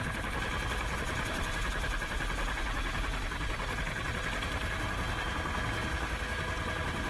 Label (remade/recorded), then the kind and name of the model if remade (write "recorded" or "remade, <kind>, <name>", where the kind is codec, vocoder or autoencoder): recorded